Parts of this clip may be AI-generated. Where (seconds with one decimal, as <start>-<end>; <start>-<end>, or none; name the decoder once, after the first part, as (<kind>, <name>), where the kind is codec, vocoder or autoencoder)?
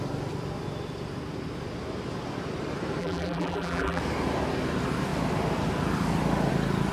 3.0-4.0 (vocoder, BigVGAN v2)